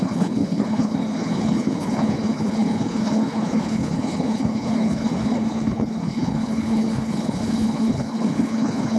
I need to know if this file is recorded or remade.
remade